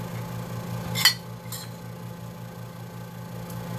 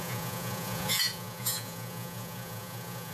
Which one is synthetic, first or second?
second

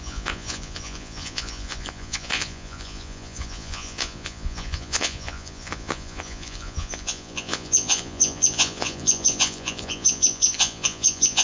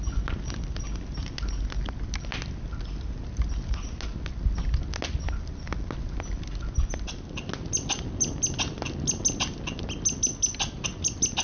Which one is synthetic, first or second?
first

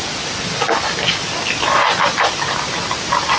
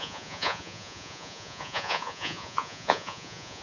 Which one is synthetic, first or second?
second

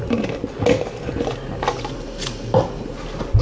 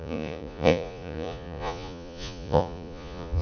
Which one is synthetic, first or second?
second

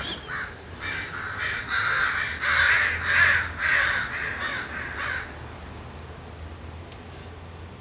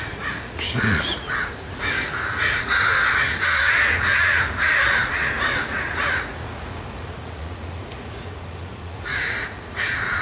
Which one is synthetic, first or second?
second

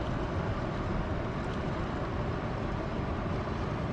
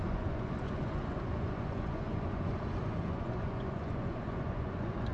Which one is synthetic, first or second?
second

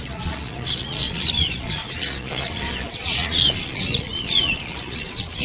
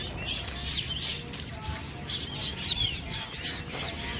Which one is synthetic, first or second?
first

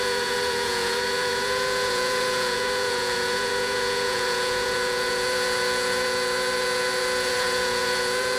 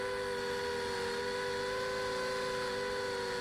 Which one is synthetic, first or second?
first